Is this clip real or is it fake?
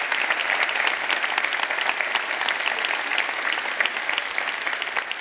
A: real